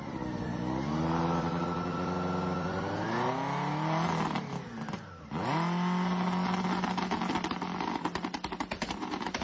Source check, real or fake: real